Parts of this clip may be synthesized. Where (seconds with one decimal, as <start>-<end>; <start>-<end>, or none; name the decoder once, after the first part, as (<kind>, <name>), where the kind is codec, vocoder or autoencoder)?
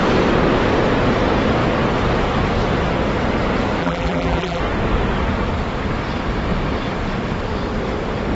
3.8-4.6 (vocoder, BigVGAN v2)